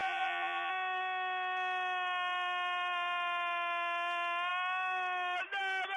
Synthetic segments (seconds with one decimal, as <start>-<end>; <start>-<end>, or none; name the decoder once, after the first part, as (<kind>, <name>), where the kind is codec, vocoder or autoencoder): 0.0-0.7 (vocoder, Vocos)

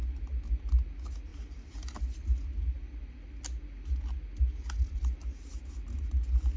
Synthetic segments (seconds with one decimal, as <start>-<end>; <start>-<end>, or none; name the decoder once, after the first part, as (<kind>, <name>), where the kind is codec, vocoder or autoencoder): none

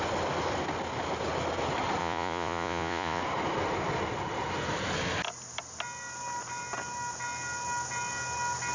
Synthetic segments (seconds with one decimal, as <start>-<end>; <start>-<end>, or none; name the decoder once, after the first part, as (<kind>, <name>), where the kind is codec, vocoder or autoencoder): 2.0-3.2 (vocoder, Vocos)